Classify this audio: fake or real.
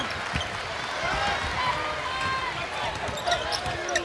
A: real